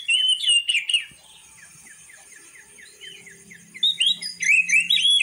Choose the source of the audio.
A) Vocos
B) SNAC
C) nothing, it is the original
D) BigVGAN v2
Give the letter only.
C